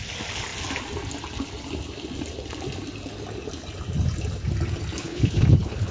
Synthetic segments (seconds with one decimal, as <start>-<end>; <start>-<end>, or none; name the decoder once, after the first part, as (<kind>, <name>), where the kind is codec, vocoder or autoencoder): 5.0-5.9 (codec, HILCodec)